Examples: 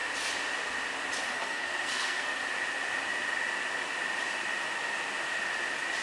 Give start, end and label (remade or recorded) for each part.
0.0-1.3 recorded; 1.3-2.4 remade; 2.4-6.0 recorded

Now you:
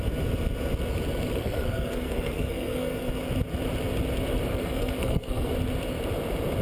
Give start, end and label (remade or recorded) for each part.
0.0-1.4 recorded; 1.4-3.1 remade; 3.1-4.5 recorded; 4.5-5.5 remade; 5.5-6.6 recorded

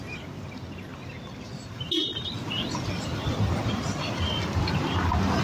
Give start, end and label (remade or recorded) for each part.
0.0-5.4 recorded

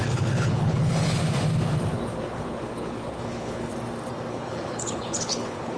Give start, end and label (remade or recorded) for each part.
0.0-1.2 remade; 1.2-2.1 recorded; 2.1-3.7 remade; 3.7-4.3 recorded; 4.3-5.8 remade